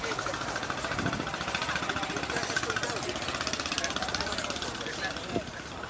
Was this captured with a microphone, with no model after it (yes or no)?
yes